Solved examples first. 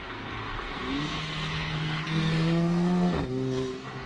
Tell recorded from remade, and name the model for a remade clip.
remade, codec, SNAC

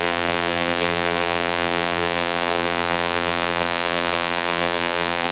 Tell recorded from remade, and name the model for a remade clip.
remade, vocoder, BigVGAN v2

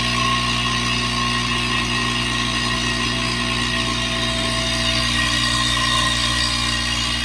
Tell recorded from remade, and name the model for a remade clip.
recorded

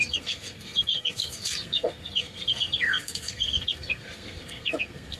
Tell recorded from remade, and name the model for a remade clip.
remade, codec, SNAC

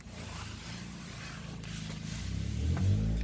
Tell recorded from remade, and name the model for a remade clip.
recorded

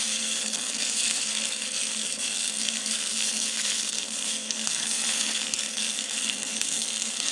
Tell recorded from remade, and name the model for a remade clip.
remade, codec, SNAC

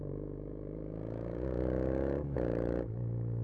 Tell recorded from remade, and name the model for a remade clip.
remade, autoencoder, DAC-VAE